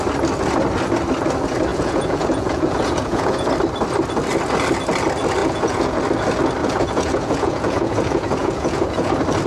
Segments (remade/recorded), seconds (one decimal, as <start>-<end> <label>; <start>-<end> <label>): 0.0-1.7 recorded; 1.7-3.5 remade; 3.5-5.4 recorded; 5.4-6.0 remade; 6.0-6.6 recorded; 6.6-9.1 remade; 9.1-9.5 recorded